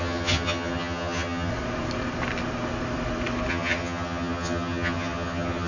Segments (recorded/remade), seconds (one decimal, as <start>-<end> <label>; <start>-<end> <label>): 0.0-1.5 remade; 1.5-3.5 recorded; 3.5-5.7 remade